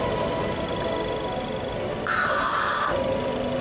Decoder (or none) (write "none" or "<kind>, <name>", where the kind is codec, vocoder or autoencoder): none